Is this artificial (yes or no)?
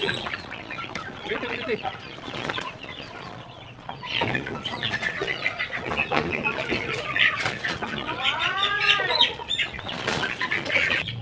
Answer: yes